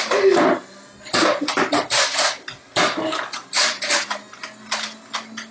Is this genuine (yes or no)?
yes